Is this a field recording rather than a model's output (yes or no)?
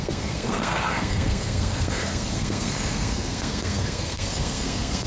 no